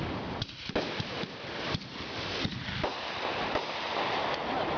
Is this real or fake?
real